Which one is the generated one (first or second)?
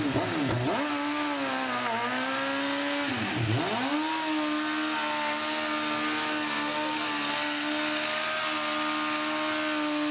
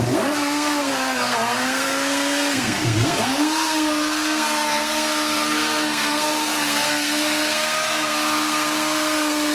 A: second